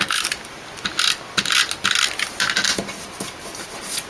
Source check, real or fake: real